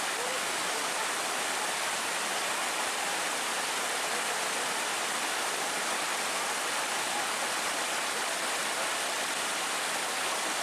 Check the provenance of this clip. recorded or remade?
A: recorded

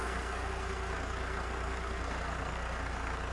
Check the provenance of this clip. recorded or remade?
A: remade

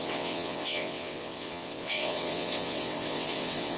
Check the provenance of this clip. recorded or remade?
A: remade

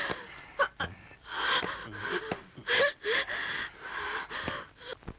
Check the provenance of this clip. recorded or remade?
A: recorded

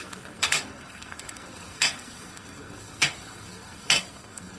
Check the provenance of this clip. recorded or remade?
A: remade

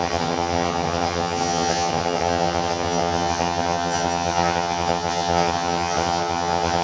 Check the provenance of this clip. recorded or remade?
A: remade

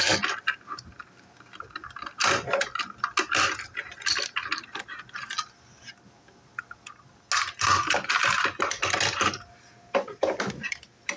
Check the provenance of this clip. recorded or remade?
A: recorded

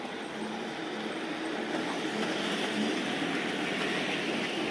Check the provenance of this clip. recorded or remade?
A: recorded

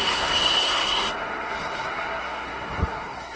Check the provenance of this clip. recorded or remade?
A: remade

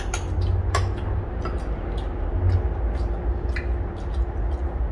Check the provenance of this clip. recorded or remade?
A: recorded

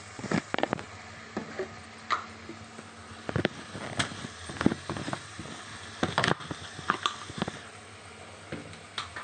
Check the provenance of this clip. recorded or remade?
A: recorded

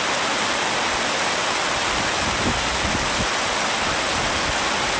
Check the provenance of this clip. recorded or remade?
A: recorded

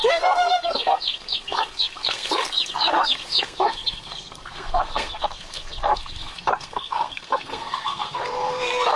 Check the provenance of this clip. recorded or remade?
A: remade